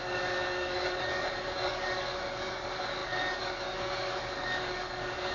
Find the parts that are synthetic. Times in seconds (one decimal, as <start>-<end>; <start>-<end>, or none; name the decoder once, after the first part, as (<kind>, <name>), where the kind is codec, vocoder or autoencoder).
0.0-5.3 (codec, DAC)